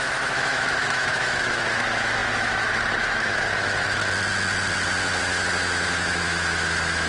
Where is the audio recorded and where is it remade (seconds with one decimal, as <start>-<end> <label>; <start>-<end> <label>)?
0.0-4.0 remade; 4.0-5.2 recorded; 5.2-7.1 remade